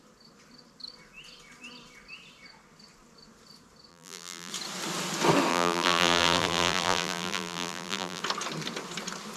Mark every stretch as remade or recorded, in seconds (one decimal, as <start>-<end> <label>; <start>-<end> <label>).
0.0-3.9 recorded; 3.9-4.5 remade; 4.5-5.5 recorded; 5.5-8.2 remade; 8.2-9.4 recorded